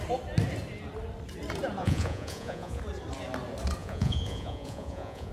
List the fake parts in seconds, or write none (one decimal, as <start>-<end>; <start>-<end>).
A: 1.8-2.8; 3.8-5.3